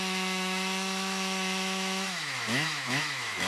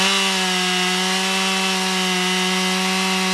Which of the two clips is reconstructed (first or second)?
first